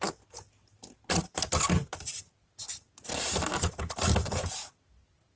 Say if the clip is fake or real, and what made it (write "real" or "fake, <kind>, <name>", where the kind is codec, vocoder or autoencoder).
real